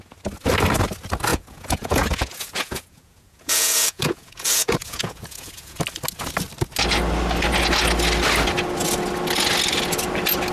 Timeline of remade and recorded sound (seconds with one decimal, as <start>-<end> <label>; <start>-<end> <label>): 0.0-1.3 recorded; 1.3-5.8 remade; 5.8-10.5 recorded